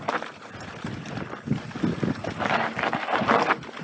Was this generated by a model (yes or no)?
no